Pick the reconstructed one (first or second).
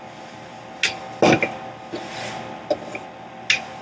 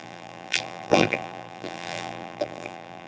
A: second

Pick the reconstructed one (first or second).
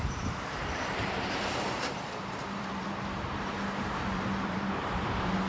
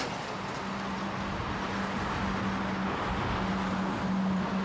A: first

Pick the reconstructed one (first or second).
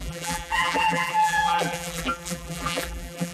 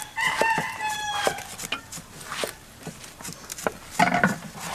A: first